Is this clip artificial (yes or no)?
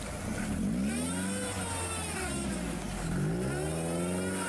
no